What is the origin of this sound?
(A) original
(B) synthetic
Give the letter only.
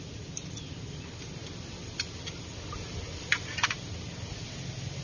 A